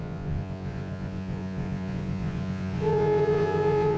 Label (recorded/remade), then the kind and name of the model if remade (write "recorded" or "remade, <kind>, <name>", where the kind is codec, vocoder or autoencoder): remade, vocoder, Vocos